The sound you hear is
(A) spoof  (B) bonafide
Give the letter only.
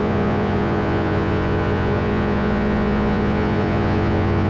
A